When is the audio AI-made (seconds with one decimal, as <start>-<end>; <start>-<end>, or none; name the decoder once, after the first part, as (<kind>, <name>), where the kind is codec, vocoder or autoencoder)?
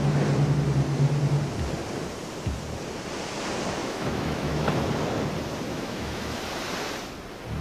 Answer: 3.8-4.7 (autoencoder, DAC-VAE); 5.7-6.4